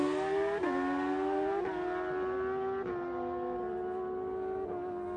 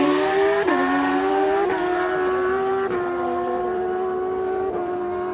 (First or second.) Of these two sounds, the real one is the first